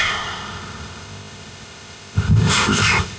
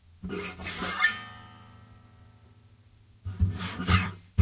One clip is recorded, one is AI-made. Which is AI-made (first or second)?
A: first